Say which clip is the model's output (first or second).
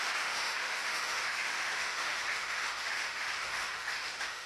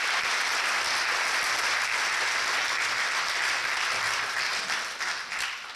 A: first